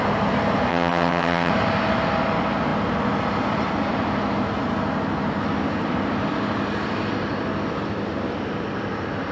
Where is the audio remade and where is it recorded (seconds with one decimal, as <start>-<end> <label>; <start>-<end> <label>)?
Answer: 0.0-0.7 recorded; 0.7-1.5 remade; 1.5-9.3 recorded